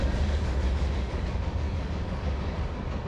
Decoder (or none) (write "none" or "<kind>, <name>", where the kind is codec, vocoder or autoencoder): codec, DAC